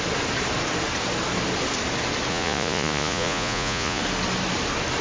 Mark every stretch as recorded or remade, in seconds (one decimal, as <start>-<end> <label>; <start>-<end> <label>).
0.0-2.3 recorded; 2.3-4.0 remade; 4.0-5.0 recorded